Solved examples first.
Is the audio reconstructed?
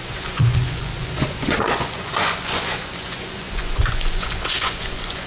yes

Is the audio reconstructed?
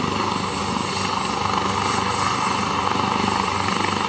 no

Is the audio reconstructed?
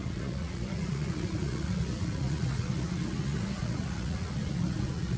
yes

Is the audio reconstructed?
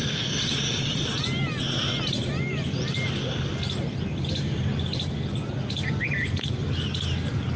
no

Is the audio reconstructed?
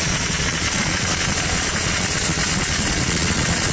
yes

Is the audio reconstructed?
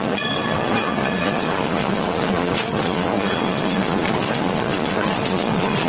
yes